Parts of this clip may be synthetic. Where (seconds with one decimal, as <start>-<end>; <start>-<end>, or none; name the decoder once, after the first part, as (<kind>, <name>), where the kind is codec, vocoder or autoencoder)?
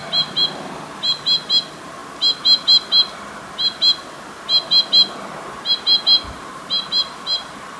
none